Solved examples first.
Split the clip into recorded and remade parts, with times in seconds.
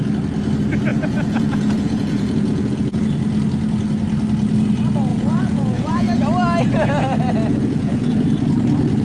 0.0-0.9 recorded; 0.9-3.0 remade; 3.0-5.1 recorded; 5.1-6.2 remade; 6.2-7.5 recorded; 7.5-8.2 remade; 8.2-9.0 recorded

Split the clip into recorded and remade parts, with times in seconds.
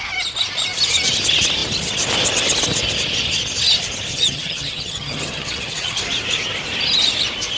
0.0-4.1 recorded; 4.1-6.0 remade; 6.0-7.6 recorded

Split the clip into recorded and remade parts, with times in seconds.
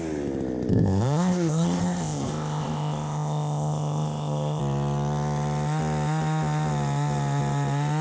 0.0-0.7 recorded; 0.7-4.6 remade; 4.6-8.0 recorded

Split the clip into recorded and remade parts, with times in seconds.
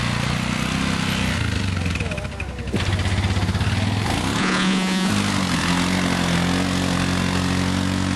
0.0-4.4 recorded; 4.4-5.1 remade; 5.1-8.2 recorded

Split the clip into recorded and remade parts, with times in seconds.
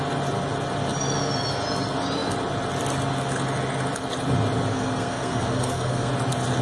0.0-4.7 recorded; 4.7-6.1 remade; 6.1-6.6 recorded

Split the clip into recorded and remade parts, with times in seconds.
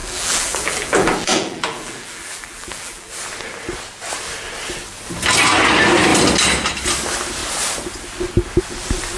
0.0-3.1 remade; 3.1-9.2 recorded